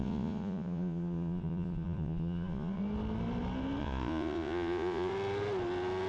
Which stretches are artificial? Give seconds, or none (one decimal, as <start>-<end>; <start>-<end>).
0.0-2.8; 3.8-5.1